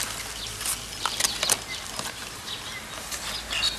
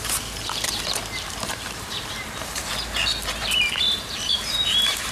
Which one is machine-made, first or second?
second